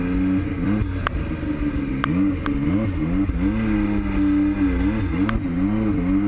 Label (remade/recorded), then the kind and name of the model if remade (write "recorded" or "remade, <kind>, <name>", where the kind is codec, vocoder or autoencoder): recorded